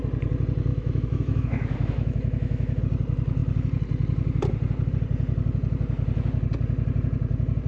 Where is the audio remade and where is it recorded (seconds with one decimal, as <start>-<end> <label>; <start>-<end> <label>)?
0.0-0.7 recorded; 0.7-2.8 remade; 2.8-7.7 recorded